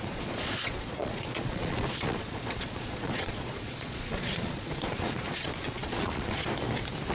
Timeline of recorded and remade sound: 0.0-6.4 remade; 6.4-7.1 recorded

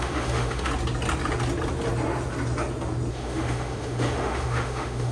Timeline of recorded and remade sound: 0.0-0.7 remade; 0.7-3.1 recorded; 3.1-5.1 remade

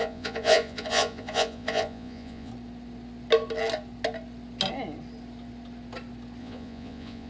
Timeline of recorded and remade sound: 0.0-2.5 remade; 2.5-6.4 recorded; 6.4-7.3 remade

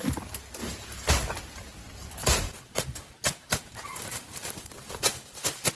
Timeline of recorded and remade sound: 0.0-0.6 recorded; 0.6-1.1 remade; 1.1-2.2 recorded; 2.2-5.7 remade

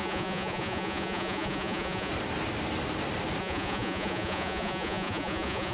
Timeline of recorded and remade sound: 0.0-2.1 remade; 2.1-3.4 recorded; 3.4-5.7 remade

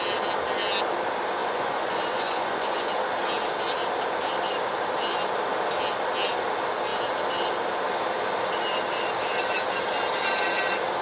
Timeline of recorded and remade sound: 0.0-1.4 recorded; 1.4-2.9 remade; 2.9-11.0 recorded